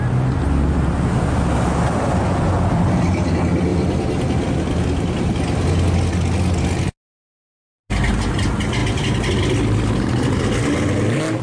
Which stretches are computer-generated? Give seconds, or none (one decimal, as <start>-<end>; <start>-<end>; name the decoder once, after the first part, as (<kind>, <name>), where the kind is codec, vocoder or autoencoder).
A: none